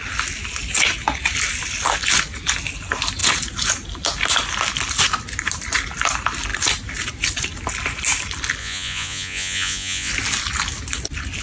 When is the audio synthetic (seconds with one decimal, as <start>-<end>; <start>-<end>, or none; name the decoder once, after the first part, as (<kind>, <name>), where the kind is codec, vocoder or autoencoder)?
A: 8.6-10.1 (vocoder, Vocos)